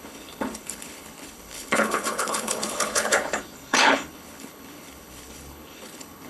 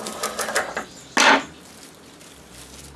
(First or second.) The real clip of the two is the second